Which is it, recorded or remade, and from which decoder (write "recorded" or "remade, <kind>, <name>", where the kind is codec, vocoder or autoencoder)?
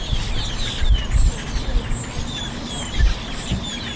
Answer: recorded